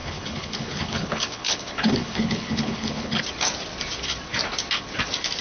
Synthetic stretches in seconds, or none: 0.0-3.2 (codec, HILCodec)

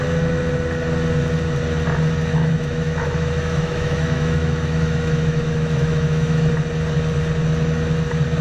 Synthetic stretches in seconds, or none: 2.3-6.5 (autoencoder, DAC-VAE)

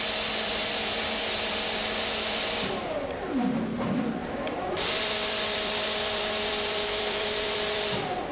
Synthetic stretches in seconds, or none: 4.2-7.9 (vocoder, BigVGAN v2)

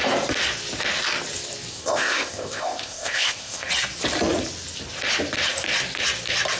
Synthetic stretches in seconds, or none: 1.7-3.7 (codec, ZipCodec)

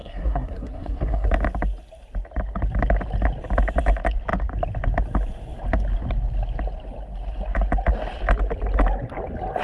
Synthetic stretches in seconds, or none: 0.0-1.3 (codec, SNAC)

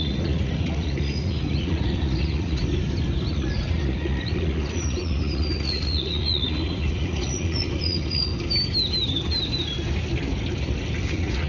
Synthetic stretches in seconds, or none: 0.0-2.6 (vocoder, Vocos); 3.3-8.3; 11.1-11.5